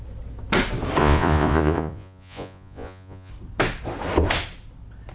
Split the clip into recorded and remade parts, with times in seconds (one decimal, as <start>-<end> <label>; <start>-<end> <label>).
0.0-1.0 recorded; 1.0-3.3 remade; 3.3-5.1 recorded